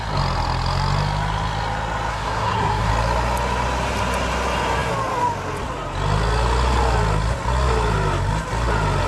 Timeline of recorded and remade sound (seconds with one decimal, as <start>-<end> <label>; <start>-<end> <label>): 0.0-2.1 recorded; 2.1-2.9 remade; 2.9-9.1 recorded